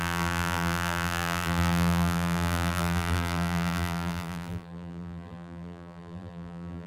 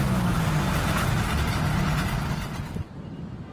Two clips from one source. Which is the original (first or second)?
second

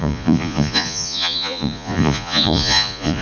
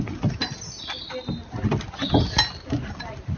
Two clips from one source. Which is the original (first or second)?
second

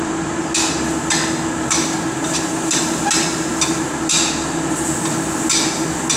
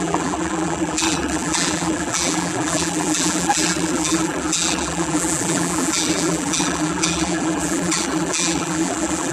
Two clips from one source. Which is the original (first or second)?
first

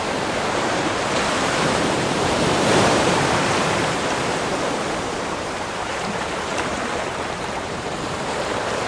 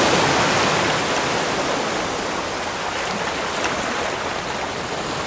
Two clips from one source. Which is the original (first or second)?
second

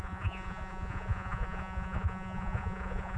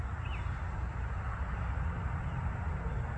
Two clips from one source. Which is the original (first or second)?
second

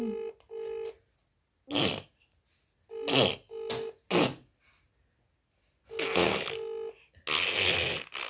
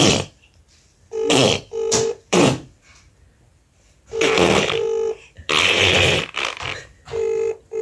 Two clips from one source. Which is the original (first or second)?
first